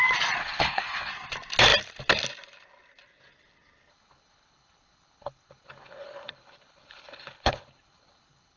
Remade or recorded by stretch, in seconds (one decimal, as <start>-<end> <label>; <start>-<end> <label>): 0.0-0.4 recorded; 0.4-1.1 remade; 1.1-3.9 recorded; 3.9-8.6 remade